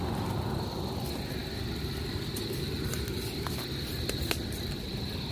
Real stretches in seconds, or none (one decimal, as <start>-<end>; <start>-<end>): 0.0-5.3